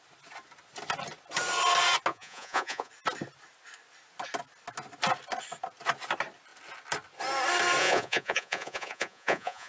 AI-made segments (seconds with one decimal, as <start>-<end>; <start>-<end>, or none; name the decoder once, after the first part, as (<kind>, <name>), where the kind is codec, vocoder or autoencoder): 2.1-2.9 (vocoder, Vocos); 7.8-9.7